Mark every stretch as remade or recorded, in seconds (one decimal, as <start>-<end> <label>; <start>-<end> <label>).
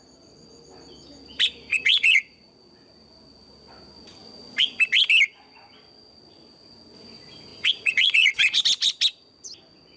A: 0.0-1.7 recorded; 1.7-2.5 remade; 2.5-7.5 recorded; 7.5-8.6 remade; 8.6-10.0 recorded